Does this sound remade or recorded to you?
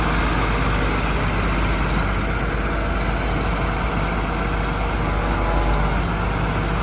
recorded